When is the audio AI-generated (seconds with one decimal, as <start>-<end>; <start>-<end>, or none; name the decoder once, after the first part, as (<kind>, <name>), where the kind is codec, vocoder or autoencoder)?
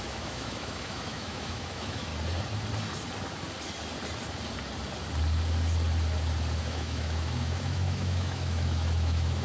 0.0-2.1 (autoencoder, DAC-VAE); 6.6-9.4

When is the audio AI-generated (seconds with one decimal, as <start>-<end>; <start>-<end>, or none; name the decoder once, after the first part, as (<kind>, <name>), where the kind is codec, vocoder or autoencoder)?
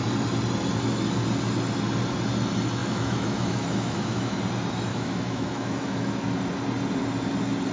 2.8-4.4 (autoencoder, DAC-VAE); 4.9-6.2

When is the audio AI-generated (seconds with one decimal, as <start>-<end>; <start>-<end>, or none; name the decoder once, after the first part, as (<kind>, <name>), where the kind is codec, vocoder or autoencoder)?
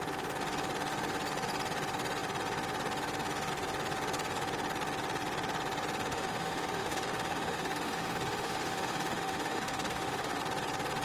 6.1-10.4 (autoencoder, DAC-VAE)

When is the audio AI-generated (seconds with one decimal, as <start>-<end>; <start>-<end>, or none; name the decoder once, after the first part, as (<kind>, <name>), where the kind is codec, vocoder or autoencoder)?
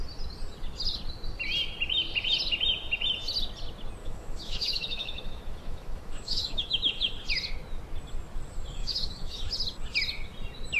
4.0-7.1 (autoencoder, DAC-VAE); 8.8-9.5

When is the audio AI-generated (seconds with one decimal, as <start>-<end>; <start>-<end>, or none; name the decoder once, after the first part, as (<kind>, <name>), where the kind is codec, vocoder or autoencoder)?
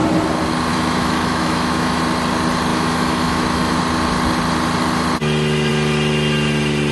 0.7-2.0 (autoencoder, DAC-VAE); 2.7-3.8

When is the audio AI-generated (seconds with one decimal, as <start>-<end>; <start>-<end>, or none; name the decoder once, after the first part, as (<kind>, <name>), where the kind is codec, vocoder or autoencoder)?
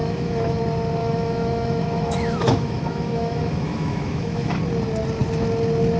0.0-0.6 (autoencoder, DAC-VAE); 1.0-4.6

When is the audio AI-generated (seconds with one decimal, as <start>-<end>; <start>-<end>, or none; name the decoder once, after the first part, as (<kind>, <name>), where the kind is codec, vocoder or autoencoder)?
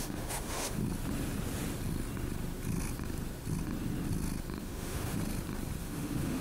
0.0-0.8 (autoencoder, DAC-VAE); 4.6-5.2; 5.8-6.4